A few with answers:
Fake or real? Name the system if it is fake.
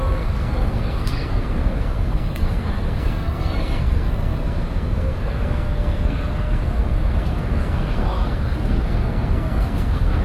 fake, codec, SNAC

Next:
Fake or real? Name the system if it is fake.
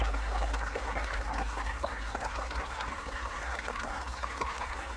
fake, codec, SNAC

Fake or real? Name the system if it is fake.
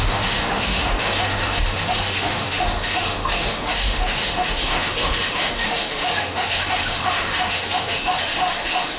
fake, autoencoder, DAC-VAE